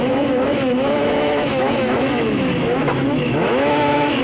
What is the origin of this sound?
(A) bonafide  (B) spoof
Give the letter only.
B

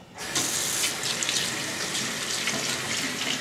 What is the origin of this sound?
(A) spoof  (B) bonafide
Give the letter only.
B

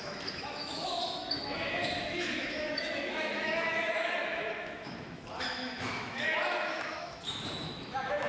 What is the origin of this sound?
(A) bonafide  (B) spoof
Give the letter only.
B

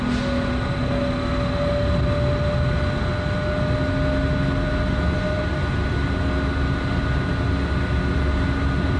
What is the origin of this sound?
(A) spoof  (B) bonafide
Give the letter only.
B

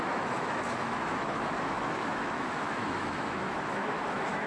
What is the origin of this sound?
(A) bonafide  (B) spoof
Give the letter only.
B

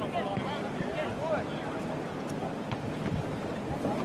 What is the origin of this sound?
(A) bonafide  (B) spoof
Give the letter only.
A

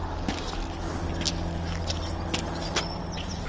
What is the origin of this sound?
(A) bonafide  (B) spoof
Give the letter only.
A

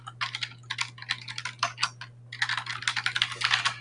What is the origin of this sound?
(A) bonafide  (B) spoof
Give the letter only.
A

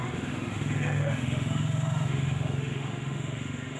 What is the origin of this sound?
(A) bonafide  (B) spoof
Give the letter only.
B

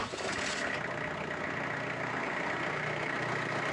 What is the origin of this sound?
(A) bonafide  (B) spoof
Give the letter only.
A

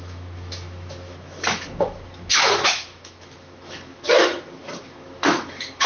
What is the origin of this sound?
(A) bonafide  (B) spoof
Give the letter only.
B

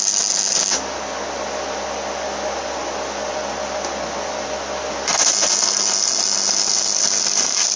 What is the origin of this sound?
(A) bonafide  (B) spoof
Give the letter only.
A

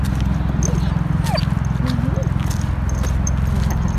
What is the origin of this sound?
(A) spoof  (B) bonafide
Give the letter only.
B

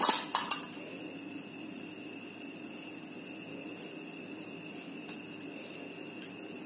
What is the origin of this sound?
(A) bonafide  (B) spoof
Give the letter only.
A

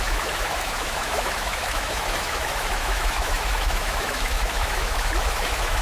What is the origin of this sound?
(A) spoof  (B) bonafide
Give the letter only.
A